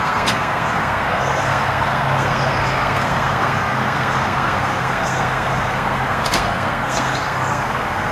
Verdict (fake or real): fake